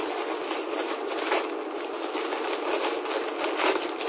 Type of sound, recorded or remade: recorded